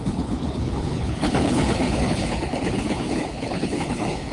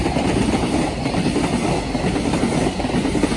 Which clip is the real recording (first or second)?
second